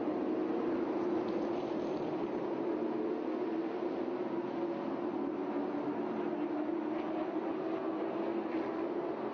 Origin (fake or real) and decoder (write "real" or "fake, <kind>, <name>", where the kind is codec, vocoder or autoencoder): real